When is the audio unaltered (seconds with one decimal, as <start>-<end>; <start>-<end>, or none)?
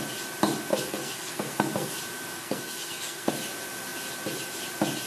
0.0-0.7; 2.0-2.4; 3.3-5.1